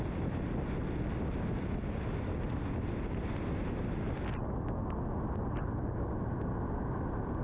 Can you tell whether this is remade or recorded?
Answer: recorded